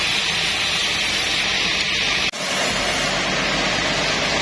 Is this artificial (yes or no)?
no